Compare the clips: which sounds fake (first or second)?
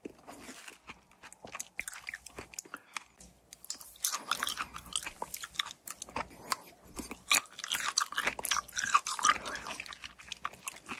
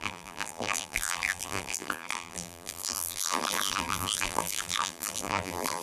second